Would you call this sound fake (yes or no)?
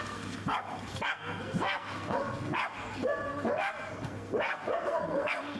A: yes